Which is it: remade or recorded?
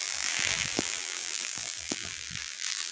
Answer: remade